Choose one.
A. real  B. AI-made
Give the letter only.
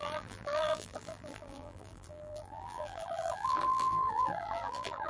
B